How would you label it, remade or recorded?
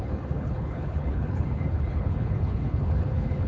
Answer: remade